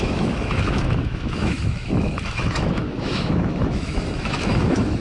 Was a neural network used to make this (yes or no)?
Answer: yes